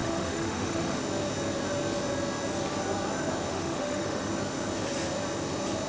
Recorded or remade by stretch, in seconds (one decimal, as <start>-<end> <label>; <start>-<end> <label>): 0.0-1.0 remade; 1.0-3.5 recorded; 3.5-4.3 remade; 4.3-5.9 recorded